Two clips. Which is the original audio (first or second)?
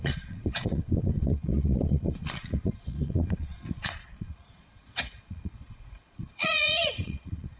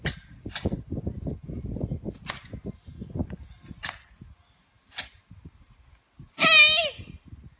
second